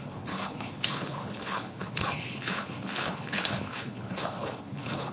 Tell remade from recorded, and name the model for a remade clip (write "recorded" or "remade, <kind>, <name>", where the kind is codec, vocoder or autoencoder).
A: remade, codec, HILCodec